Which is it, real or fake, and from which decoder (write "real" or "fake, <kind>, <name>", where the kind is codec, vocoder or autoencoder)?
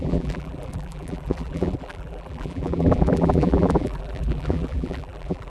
fake, vocoder, BigVGAN v2